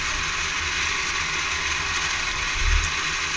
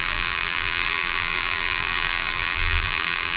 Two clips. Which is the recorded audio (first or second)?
first